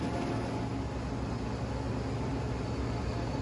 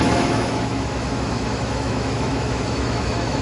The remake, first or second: second